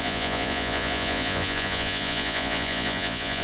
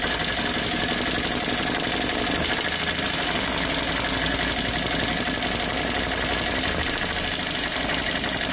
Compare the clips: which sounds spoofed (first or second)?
first